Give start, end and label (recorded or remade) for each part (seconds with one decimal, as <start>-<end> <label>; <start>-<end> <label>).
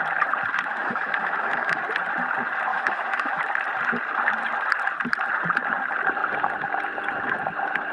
0.0-0.7 recorded; 0.7-1.8 remade; 1.8-2.7 recorded; 2.7-3.4 remade; 3.4-7.9 recorded